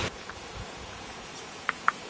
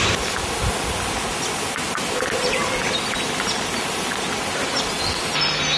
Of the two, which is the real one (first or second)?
second